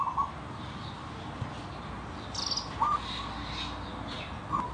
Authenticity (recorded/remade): recorded